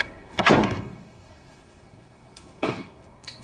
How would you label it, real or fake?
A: fake